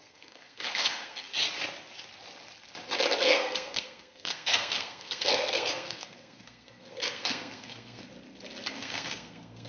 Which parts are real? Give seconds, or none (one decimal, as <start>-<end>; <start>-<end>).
1.3-3.2; 8.1-8.7